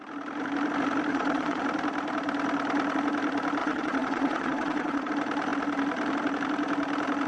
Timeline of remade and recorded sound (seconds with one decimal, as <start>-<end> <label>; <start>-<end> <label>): 0.0-1.1 recorded; 1.1-1.6 remade; 1.6-3.6 recorded; 3.6-5.1 remade; 5.1-7.3 recorded